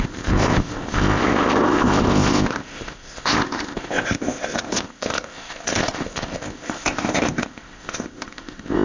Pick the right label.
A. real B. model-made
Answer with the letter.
B